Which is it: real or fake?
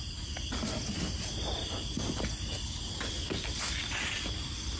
real